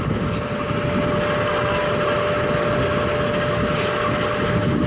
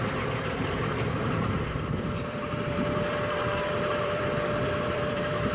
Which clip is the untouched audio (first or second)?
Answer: first